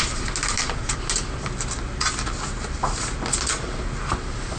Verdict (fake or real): real